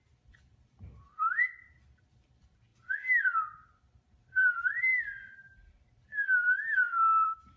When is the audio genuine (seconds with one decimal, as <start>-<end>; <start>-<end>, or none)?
2.7-3.2